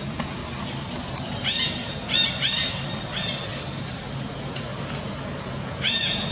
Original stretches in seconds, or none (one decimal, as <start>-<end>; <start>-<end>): 0.4-4.2; 4.7-5.4